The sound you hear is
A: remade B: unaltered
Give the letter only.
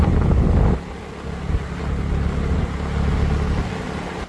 B